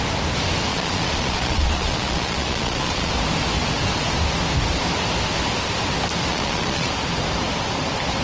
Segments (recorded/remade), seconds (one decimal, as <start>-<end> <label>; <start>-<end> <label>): 0.0-0.7 recorded; 0.7-3.1 remade; 3.1-6.3 recorded; 6.3-6.9 remade; 6.9-8.2 recorded